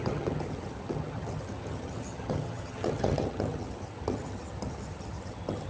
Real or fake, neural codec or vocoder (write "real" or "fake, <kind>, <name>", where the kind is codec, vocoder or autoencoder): fake, vocoder, HiFi-GAN